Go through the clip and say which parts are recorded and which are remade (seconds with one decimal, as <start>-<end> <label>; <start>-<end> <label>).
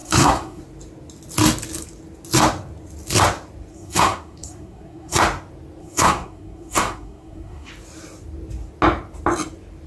0.0-0.6 remade; 0.6-3.7 recorded; 3.7-5.2 remade; 5.2-5.8 recorded; 5.8-7.7 remade; 7.7-9.9 recorded